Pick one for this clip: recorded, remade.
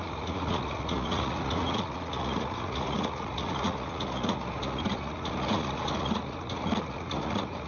remade